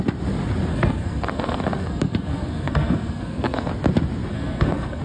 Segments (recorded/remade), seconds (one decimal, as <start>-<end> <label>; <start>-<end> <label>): 0.0-0.7 recorded; 0.7-3.7 remade; 3.7-4.3 recorded; 4.3-5.0 remade